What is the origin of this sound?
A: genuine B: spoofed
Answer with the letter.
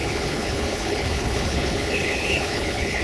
B